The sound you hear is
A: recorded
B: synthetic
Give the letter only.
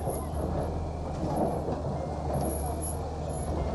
A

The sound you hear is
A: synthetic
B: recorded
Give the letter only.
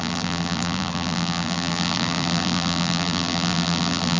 A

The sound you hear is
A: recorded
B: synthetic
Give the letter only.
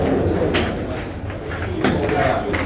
A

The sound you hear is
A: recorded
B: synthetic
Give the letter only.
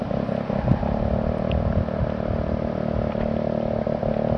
A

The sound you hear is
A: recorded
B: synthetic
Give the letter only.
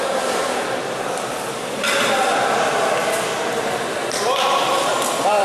B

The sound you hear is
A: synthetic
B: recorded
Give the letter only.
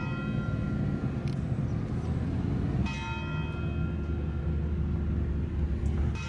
B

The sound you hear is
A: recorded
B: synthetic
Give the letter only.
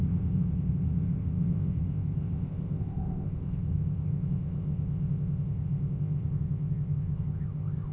B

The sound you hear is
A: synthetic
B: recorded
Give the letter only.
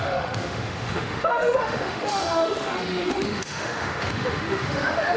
A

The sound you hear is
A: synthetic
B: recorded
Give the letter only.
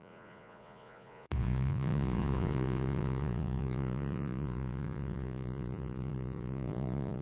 A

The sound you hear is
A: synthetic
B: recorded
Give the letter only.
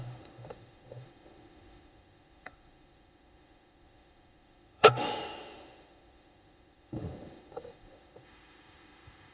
A